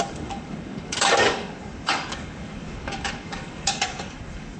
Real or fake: fake